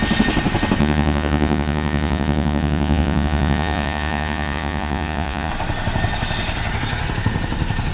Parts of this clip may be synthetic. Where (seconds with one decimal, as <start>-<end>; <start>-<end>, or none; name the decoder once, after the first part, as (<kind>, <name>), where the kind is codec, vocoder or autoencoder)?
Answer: 0.8-5.5 (vocoder, Vocos)